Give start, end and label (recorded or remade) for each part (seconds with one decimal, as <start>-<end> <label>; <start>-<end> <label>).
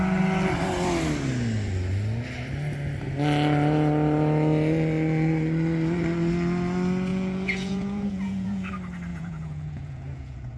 0.0-7.1 recorded; 7.1-8.7 remade; 8.7-9.1 recorded; 9.1-10.6 remade